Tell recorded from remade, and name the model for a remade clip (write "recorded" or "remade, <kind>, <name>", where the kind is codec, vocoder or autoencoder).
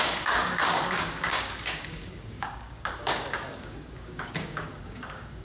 remade, codec, DAC